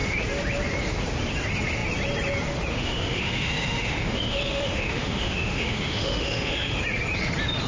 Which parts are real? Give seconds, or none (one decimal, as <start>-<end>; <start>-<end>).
0.0-2.7; 6.8-7.7